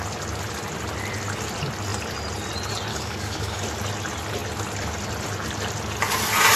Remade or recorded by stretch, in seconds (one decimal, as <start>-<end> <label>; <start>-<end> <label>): 0.0-2.9 recorded; 2.9-3.6 remade; 3.6-6.6 recorded